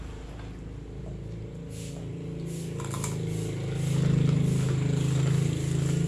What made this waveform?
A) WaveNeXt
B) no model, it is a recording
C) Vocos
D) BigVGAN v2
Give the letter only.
B